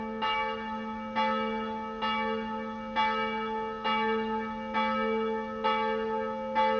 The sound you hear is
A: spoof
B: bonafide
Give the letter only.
B